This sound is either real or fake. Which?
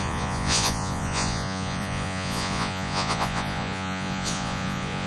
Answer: fake